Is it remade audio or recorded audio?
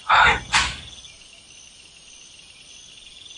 recorded